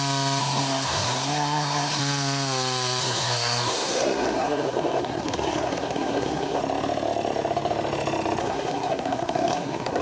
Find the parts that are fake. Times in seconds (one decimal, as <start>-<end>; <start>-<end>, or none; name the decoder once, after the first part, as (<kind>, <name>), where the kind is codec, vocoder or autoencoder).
0.4-2.0 (codec, SNAC); 3.0-6.6; 8.4-10.0